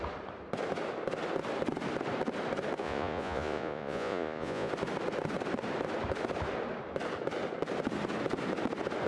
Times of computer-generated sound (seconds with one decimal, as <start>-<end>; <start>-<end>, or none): 2.8-4.7

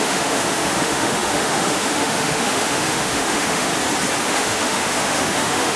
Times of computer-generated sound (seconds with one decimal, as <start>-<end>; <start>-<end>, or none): 0.0-3.7; 4.2-5.8

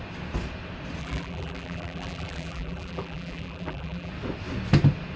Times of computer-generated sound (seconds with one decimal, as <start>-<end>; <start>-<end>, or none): 1.0-4.1

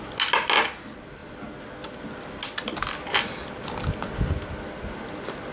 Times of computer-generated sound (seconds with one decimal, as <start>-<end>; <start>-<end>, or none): none

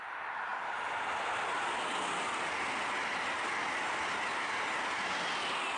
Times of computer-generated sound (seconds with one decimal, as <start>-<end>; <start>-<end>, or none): none

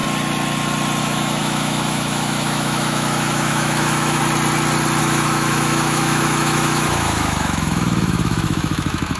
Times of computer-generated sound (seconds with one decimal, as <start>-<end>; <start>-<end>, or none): 1.0-4.2; 5.0-9.2

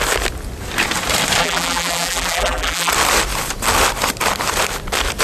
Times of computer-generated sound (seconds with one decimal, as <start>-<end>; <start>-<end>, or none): 1.4-2.9

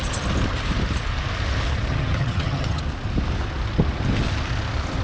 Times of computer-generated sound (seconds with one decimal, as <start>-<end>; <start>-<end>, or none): 1.9-2.8